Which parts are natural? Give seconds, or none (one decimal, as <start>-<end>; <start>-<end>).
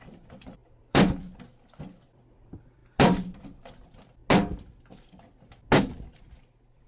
4.2-6.2